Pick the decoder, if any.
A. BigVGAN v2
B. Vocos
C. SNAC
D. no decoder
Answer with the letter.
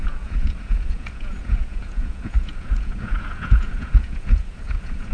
B